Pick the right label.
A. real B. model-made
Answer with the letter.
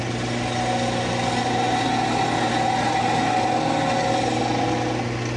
A